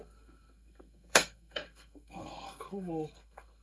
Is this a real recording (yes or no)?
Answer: no